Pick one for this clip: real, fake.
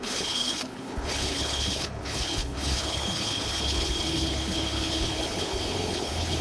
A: fake